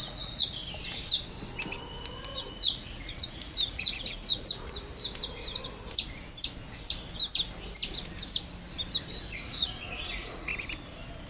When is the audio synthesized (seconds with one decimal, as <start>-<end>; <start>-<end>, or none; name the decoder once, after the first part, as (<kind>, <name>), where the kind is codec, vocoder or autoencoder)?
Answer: 0.0-0.6 (vocoder, Vocos); 2.0-4.9; 9.4-10.5